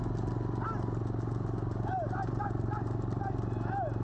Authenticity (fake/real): real